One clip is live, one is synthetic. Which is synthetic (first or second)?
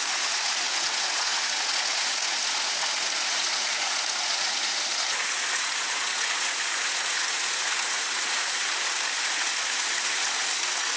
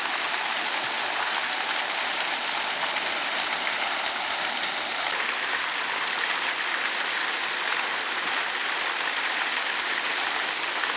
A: first